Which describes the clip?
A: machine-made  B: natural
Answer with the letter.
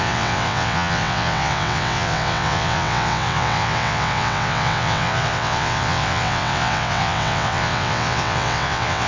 A